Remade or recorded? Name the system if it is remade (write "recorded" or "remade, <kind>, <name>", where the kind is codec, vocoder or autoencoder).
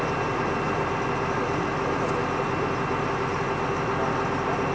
recorded